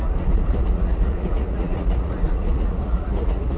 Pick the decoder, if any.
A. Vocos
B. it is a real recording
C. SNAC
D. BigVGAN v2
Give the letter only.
A